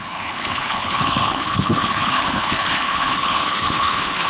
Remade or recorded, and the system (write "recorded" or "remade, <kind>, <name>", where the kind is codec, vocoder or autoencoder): remade, codec, HILCodec